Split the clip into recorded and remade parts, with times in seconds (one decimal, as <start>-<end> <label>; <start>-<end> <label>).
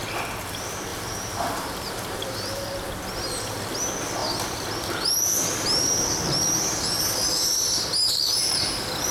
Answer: 0.0-0.9 recorded; 0.9-2.9 remade; 2.9-4.2 recorded; 4.2-5.2 remade; 5.2-9.1 recorded